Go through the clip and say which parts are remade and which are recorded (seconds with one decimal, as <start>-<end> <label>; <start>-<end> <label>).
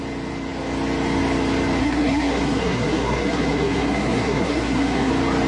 0.0-1.8 recorded; 1.8-5.1 remade; 5.1-5.5 recorded